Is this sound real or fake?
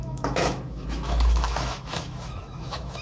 fake